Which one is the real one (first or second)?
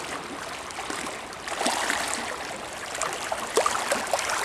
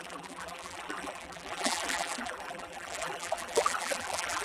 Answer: first